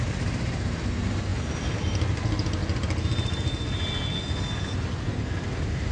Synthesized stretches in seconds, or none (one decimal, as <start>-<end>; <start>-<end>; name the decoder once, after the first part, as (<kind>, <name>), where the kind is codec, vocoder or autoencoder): none